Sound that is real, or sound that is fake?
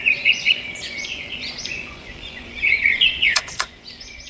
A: fake